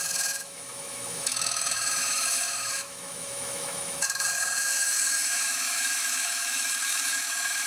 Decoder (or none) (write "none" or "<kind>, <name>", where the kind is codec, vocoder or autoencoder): autoencoder, DAC-VAE